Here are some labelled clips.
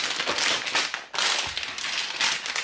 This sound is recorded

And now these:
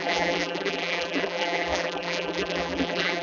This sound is remade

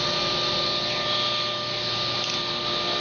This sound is recorded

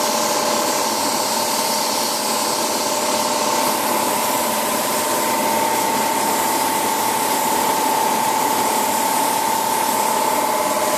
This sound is recorded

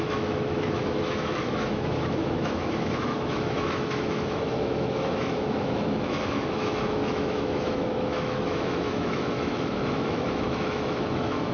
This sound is remade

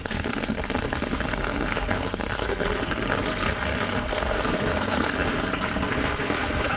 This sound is remade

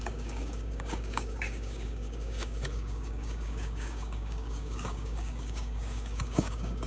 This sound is remade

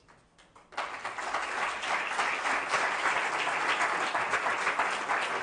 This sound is recorded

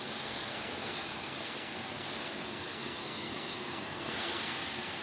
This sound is remade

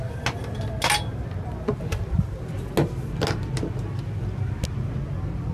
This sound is recorded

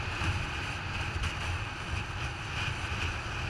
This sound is recorded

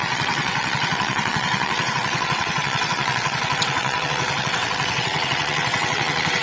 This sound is remade